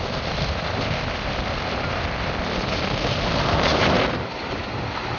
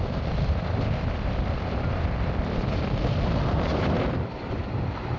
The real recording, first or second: first